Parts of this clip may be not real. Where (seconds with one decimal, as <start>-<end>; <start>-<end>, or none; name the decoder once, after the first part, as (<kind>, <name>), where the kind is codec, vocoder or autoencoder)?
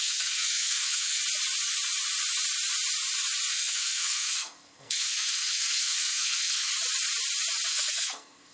0.0-1.2 (codec, SNAC); 3.5-6.7; 7.7-8.5